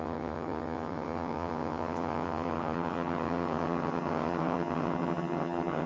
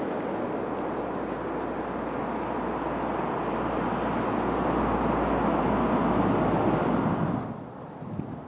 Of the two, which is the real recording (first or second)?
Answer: second